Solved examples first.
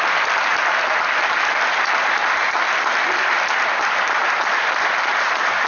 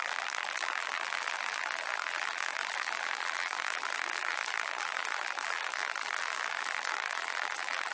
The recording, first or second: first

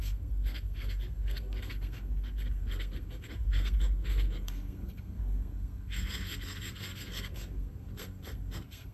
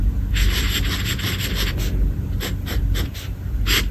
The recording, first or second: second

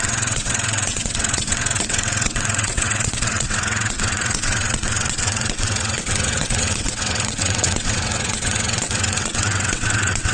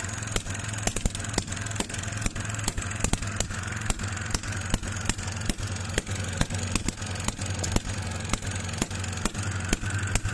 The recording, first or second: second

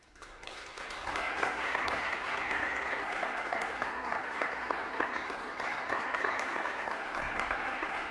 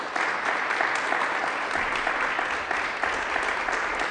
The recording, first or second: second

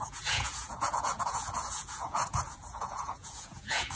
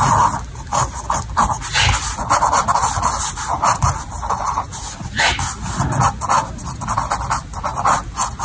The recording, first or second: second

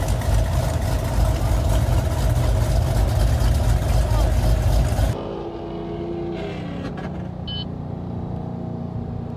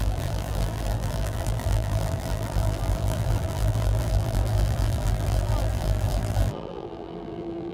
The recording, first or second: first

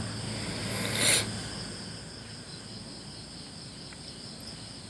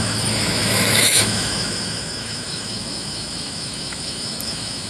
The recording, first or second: first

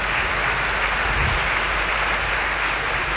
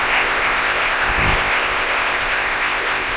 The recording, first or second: first